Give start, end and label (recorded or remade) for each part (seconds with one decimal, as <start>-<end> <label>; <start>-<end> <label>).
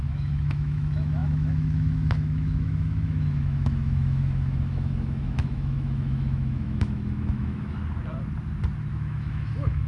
0.0-7.8 remade; 7.8-8.9 recorded; 8.9-9.9 remade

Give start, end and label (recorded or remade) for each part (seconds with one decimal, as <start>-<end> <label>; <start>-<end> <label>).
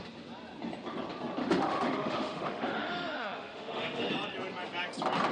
0.0-1.4 recorded; 1.4-4.1 remade; 4.1-5.3 recorded